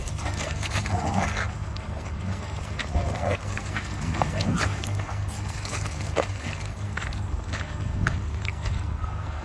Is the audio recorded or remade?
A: remade